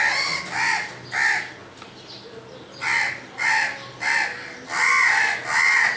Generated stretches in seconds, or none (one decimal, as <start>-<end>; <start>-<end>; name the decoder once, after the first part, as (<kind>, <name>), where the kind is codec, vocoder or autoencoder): none